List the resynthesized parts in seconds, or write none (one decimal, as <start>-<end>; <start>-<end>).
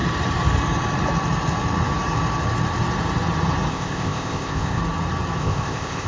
3.7-4.8; 5.4-6.1